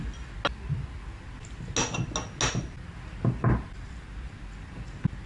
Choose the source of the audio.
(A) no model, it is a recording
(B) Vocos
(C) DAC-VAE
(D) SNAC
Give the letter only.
A